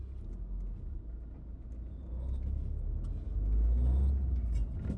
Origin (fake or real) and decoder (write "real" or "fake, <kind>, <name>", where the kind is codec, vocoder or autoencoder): real